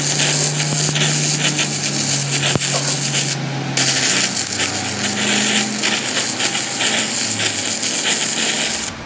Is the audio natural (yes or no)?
yes